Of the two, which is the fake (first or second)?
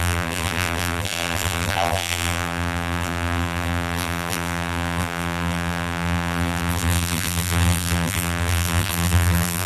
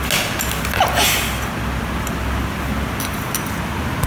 first